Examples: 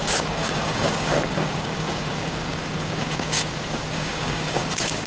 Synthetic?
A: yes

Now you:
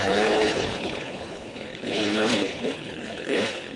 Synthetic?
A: yes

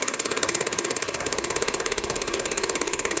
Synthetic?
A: yes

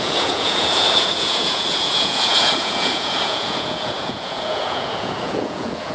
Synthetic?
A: yes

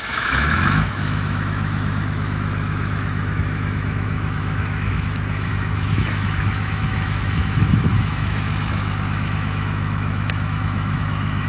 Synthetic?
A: yes